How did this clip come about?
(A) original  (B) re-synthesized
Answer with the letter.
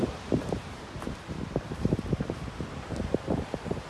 B